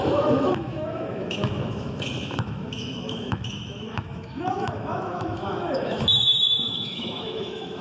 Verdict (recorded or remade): remade